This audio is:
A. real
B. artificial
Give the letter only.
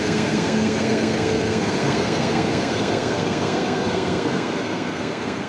B